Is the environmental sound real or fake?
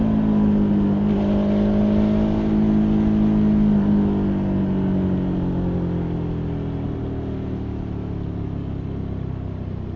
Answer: real